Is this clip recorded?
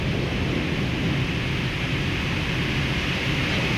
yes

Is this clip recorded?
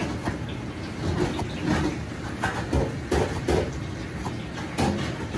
yes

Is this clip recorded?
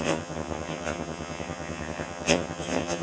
no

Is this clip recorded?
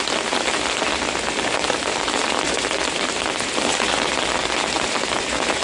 yes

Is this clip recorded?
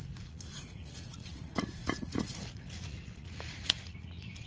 no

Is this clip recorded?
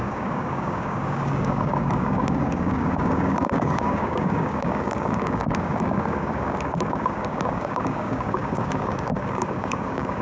no